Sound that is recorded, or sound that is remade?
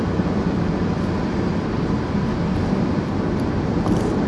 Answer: recorded